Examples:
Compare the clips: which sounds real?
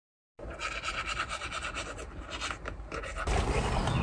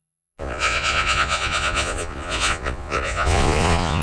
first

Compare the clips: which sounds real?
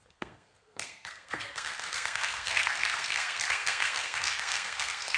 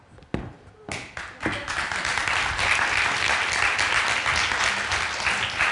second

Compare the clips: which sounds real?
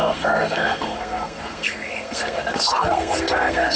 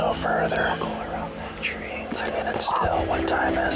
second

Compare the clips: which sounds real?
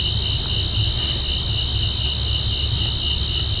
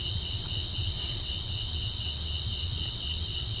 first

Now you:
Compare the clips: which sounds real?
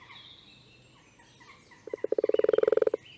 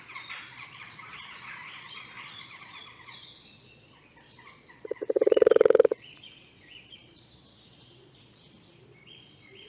first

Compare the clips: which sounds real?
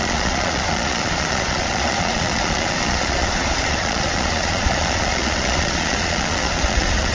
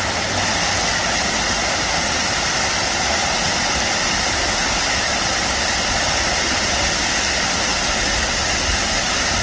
second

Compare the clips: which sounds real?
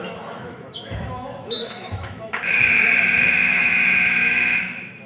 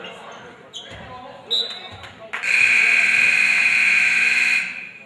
second